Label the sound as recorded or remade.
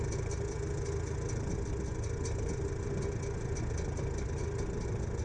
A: recorded